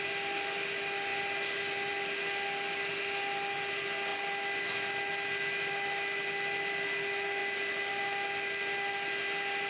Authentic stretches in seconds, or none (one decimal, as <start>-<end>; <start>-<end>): 0.0-9.7